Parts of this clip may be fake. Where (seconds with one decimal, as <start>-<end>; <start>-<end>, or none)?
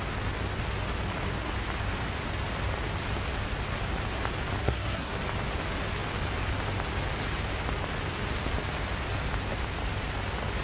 4.6-5.2